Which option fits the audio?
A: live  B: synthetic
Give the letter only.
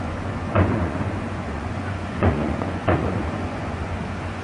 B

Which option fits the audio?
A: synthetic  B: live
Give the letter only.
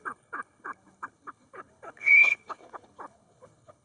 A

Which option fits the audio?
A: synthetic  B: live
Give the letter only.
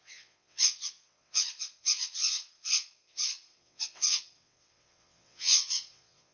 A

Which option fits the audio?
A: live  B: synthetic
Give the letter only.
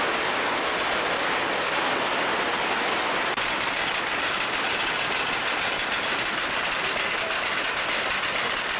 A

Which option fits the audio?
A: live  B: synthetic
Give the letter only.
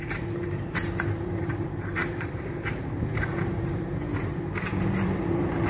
B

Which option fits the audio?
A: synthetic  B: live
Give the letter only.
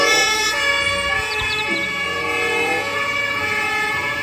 A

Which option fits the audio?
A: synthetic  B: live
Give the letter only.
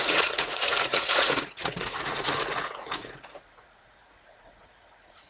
A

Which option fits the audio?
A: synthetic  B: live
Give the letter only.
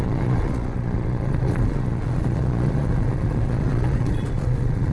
A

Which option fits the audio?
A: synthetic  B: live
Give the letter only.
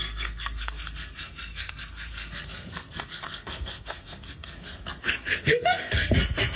A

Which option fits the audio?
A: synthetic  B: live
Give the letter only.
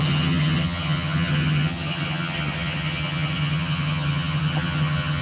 A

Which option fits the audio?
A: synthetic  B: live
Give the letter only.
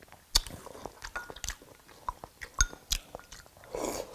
B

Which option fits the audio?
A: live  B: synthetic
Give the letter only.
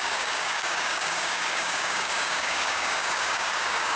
B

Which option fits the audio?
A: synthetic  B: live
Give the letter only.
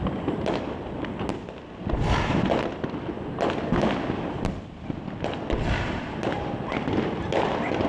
B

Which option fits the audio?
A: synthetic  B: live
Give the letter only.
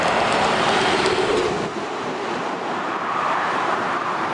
A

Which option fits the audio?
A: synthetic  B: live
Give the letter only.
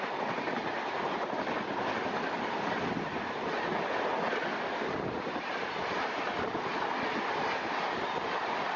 B